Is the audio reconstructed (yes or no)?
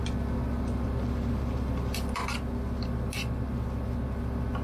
no